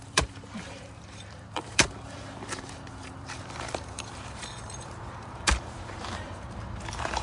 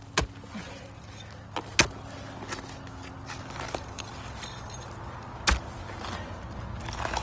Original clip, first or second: second